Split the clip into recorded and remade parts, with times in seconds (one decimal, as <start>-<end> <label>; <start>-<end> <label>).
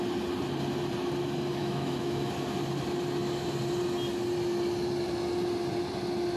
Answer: 0.0-1.6 recorded; 1.6-2.3 remade; 2.3-6.4 recorded